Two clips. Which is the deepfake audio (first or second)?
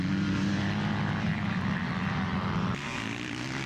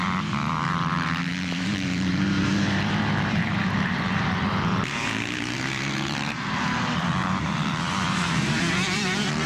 second